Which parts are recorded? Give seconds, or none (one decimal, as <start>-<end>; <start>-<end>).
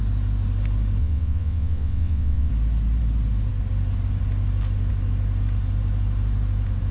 0.0-1.0; 2.5-6.9